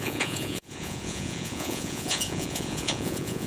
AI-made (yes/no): yes